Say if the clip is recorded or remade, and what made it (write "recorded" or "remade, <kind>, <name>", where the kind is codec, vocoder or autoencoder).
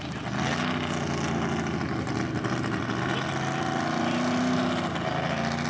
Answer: recorded